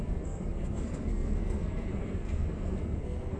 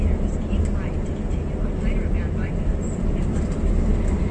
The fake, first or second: first